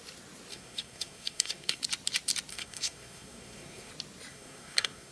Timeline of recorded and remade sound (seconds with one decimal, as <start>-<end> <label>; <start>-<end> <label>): 0.0-0.5 recorded; 0.5-1.8 remade; 1.8-2.5 recorded; 2.5-3.9 remade; 3.9-4.3 recorded; 4.3-5.1 remade